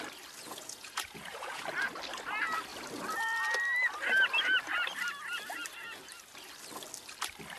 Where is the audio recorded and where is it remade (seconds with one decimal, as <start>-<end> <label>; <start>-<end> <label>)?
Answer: 0.0-0.4 recorded; 0.4-1.6 remade; 1.6-7.6 recorded